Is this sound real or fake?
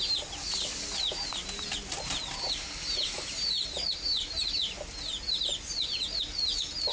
real